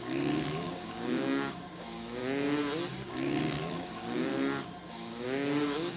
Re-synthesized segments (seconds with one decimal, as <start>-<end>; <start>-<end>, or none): 0.0-2.2; 2.9-4.3; 4.9-6.0